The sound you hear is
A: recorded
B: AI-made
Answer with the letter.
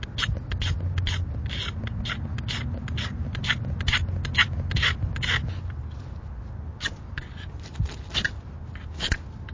A